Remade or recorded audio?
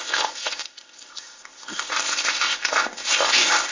remade